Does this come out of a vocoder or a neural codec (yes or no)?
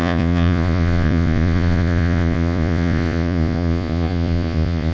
yes